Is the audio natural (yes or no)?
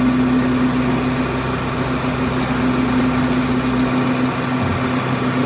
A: yes